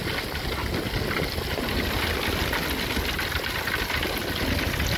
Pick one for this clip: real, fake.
real